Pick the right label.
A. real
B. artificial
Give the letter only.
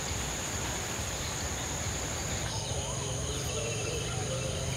A